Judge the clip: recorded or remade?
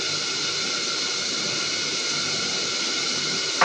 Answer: recorded